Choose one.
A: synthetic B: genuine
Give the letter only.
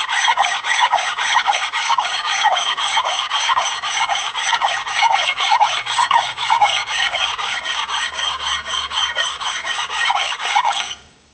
A